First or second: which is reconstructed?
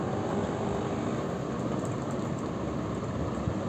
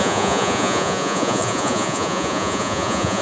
second